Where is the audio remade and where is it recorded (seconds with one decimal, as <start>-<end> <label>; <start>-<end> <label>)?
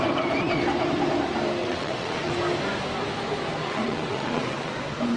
0.0-1.6 recorded; 1.6-2.3 remade; 2.3-3.6 recorded; 3.6-4.7 remade; 4.7-5.2 recorded